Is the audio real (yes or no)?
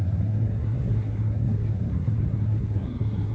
no